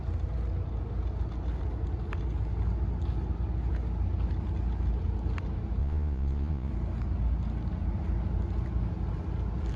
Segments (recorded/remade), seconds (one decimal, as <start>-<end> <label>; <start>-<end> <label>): 0.0-5.8 recorded; 5.8-6.7 remade; 6.7-9.8 recorded